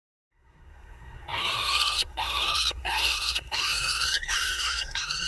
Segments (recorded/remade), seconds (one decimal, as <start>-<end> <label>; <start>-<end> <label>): 0.0-5.3 remade